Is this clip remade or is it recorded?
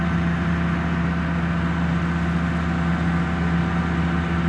recorded